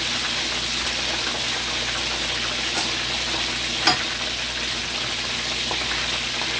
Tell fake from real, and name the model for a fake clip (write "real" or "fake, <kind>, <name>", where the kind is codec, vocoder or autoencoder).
real